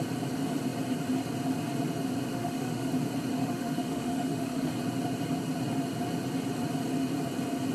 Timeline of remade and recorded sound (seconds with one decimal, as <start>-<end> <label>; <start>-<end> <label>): 0.0-2.3 recorded; 2.3-2.9 remade; 2.9-3.4 recorded; 3.4-4.7 remade; 4.7-7.7 recorded